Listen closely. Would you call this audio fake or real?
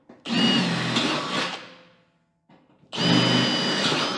real